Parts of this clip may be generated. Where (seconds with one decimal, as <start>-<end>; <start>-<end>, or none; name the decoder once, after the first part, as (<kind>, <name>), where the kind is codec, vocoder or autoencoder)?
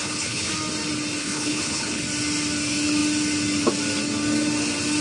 0.0-0.5 (codec, HILCodec); 1.2-2.0